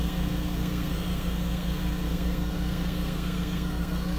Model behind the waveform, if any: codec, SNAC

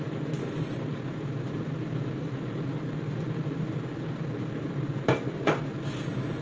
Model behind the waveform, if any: vocoder, BigVGAN v2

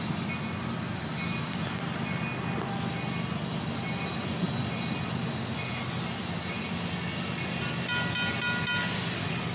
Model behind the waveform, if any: none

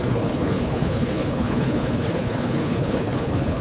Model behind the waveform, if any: codec, HILCodec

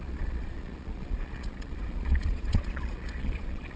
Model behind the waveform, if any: vocoder, Vocos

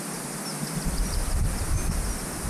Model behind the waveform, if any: none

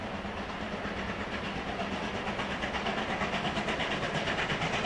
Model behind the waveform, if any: none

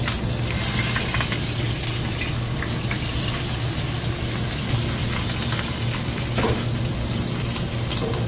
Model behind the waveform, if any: none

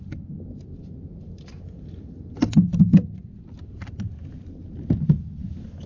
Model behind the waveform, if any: none